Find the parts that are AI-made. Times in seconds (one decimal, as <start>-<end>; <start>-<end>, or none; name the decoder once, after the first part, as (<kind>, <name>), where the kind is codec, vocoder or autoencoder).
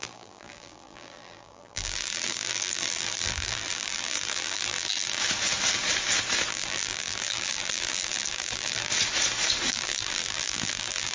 0.0-5.2 (vocoder, BigVGAN v2); 6.5-8.9; 9.7-11.1